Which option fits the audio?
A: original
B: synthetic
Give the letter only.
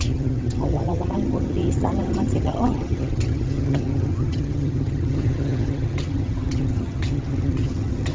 B